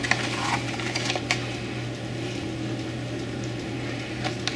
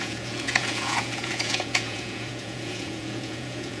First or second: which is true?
first